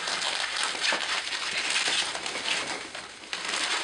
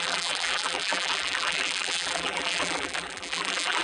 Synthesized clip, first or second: second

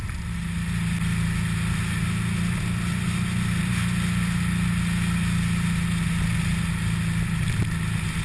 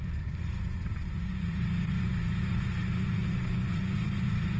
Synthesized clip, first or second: second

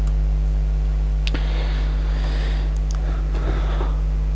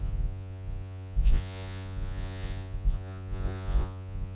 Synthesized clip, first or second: second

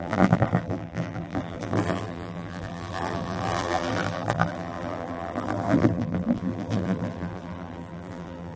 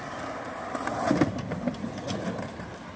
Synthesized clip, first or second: first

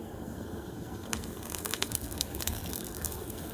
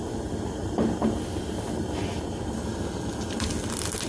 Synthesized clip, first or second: first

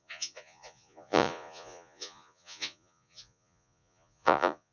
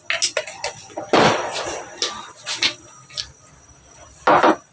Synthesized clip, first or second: first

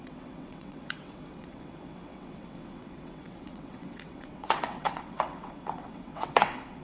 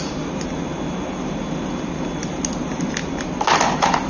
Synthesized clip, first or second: first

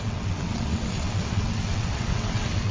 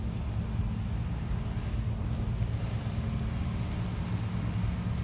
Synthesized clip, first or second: first